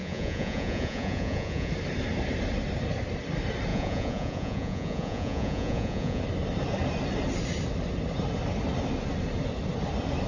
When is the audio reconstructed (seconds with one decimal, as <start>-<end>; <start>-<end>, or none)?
0.0-1.7; 3.7-6.2